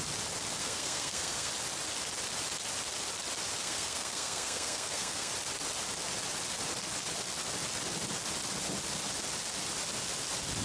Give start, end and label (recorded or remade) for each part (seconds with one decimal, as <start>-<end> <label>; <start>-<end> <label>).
0.0-0.6 recorded; 0.6-1.5 remade; 1.5-3.6 recorded; 3.6-5.3 remade; 5.3-10.6 recorded